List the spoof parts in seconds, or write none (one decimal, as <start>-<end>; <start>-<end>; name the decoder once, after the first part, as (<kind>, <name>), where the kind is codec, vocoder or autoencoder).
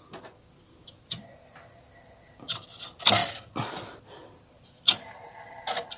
none